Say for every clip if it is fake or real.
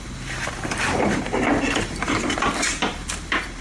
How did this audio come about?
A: fake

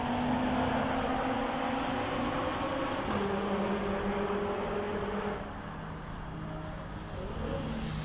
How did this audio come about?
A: real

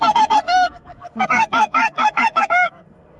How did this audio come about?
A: fake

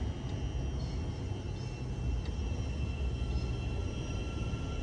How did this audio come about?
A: real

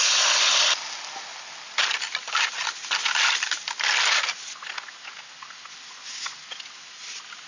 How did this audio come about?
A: real